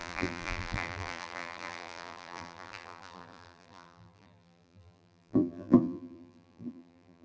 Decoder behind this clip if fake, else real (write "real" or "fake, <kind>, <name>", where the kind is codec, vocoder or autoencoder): fake, vocoder, BigVGAN v2